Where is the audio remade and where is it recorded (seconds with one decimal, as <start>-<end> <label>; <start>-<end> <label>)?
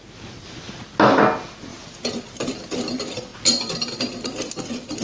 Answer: 0.0-1.7 recorded; 1.7-2.7 remade; 2.7-5.0 recorded